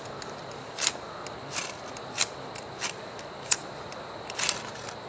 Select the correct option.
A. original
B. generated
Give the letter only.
A